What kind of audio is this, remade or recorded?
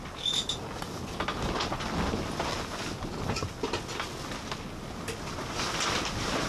recorded